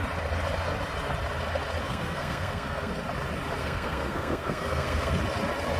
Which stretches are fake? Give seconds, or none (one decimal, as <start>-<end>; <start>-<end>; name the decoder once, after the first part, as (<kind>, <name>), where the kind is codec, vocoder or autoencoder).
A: 1.8-2.9 (codec, SNAC); 3.6-5.1